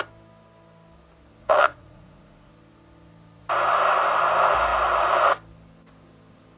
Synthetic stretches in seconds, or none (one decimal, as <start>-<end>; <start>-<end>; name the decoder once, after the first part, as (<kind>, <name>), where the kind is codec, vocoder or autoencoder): 1.4-2.5 (vocoder, Vocos)